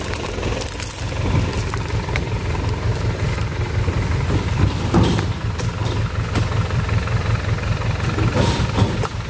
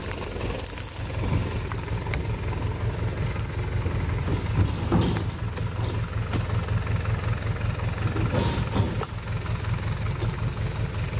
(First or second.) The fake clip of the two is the first